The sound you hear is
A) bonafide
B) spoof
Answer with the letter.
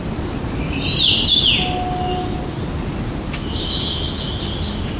A